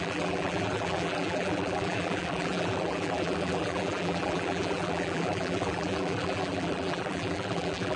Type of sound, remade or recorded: remade